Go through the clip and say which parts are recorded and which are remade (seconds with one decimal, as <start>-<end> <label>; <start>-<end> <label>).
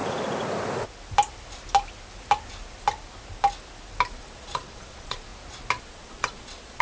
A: 0.0-4.1 recorded; 4.1-5.3 remade; 5.3-5.8 recorded; 5.8-6.8 remade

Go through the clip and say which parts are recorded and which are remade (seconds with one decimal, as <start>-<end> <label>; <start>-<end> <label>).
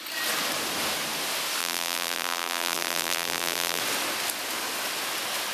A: 0.0-1.6 recorded; 1.6-3.8 remade; 3.8-5.5 recorded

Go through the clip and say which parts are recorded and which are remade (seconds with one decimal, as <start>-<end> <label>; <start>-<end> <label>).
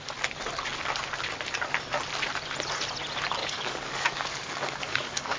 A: 0.0-3.4 recorded; 3.4-5.4 remade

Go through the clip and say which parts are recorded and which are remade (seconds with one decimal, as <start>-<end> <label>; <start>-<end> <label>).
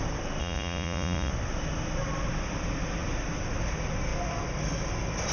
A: 0.0-0.4 recorded; 0.4-1.3 remade; 1.3-5.3 recorded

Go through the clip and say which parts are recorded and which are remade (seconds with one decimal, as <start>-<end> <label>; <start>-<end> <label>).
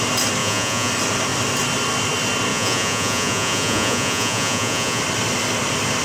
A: 0.0-0.4 recorded; 0.4-0.9 remade; 0.9-2.5 recorded; 2.5-5.0 remade; 5.0-6.0 recorded